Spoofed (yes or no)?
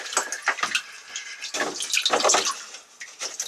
no